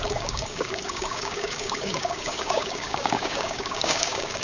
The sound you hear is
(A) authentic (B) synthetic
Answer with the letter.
B